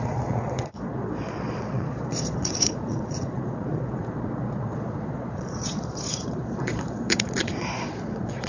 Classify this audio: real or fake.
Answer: fake